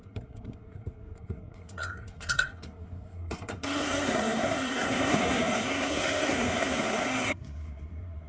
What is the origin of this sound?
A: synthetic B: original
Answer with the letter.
A